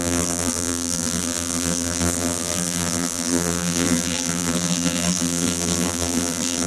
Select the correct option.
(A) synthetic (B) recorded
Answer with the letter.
A